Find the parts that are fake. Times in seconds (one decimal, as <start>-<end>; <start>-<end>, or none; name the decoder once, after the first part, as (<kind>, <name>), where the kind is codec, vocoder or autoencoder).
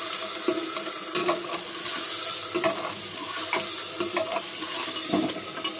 1.2-1.9 (vocoder, Vocos)